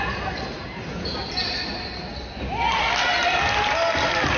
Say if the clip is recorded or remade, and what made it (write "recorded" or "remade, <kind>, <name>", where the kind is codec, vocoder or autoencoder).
recorded